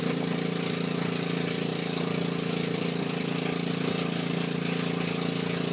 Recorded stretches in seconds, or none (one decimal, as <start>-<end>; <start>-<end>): 0.0-5.7